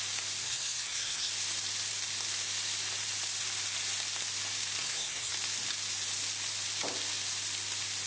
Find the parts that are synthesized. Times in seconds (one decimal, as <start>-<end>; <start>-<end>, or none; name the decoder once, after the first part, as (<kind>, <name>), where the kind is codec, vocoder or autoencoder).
0.4-1.3 (codec, SNAC); 4.8-5.3